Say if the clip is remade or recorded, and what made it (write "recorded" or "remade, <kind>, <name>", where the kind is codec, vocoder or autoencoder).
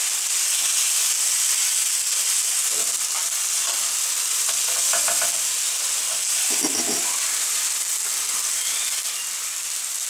recorded